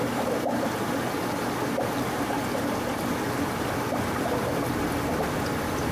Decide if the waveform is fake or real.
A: fake